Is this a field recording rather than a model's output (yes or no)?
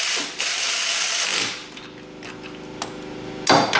yes